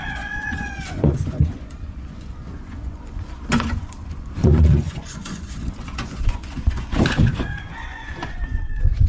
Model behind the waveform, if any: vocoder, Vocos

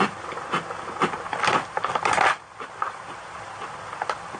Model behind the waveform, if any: none